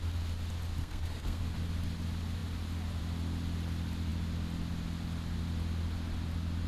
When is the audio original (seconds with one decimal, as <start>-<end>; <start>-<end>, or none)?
0.0-0.8; 1.4-6.7